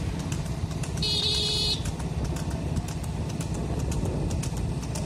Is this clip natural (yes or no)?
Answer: yes